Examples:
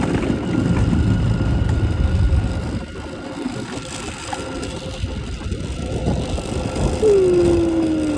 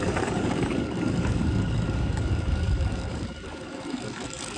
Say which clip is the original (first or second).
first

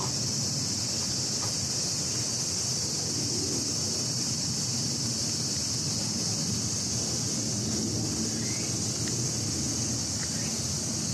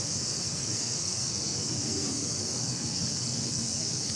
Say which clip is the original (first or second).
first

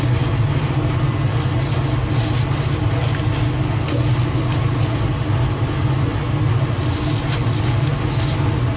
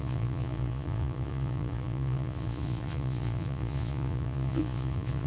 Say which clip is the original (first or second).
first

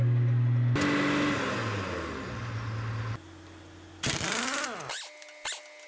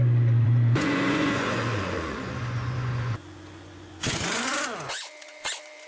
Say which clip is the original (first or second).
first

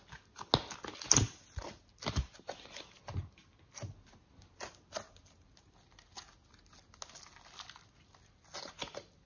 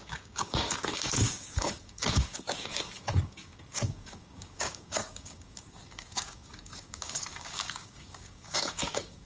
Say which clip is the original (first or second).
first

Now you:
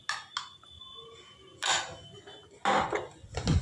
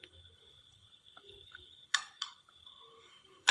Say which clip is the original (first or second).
first